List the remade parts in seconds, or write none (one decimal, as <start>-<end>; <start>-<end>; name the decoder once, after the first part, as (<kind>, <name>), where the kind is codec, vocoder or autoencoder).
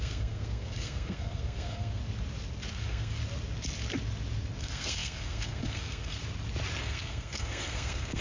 0.0-2.0 (codec, SNAC); 2.7-3.2; 4.6-6.2; 6.8-8.2